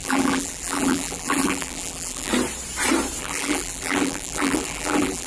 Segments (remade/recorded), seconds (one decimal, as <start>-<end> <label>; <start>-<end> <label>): 0.0-2.3 remade; 2.3-3.2 recorded; 3.2-5.3 remade